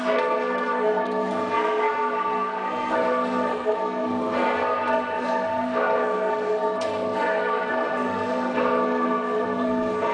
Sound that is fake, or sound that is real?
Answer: fake